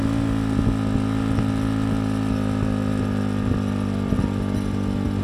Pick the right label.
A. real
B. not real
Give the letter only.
A